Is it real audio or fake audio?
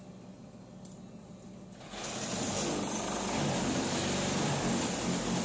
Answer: real